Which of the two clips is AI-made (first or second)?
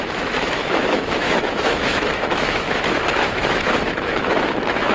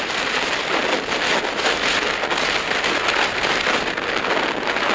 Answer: first